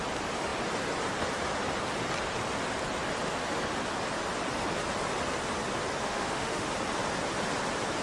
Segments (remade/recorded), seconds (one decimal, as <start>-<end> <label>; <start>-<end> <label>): 0.0-6.0 recorded; 6.0-6.7 remade; 6.7-8.0 recorded